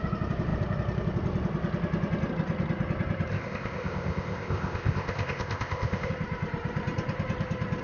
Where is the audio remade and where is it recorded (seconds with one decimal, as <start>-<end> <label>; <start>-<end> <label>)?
0.0-3.3 recorded; 3.3-6.1 remade; 6.1-7.8 recorded